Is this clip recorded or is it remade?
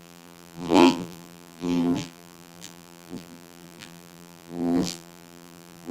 remade